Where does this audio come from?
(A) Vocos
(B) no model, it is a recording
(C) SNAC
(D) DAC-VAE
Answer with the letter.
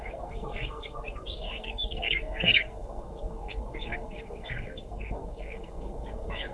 C